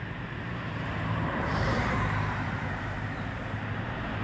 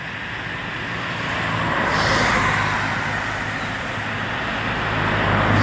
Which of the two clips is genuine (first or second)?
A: second